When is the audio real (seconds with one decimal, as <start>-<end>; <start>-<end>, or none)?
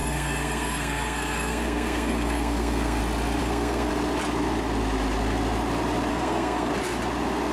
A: 3.0-3.4; 3.9-6.1; 6.7-7.5